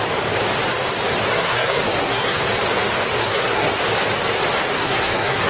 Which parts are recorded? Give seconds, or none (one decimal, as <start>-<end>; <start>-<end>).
0.0-1.3; 2.4-3.2; 3.8-4.7